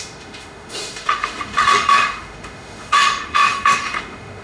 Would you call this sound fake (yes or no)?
yes